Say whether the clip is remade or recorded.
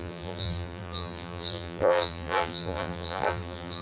remade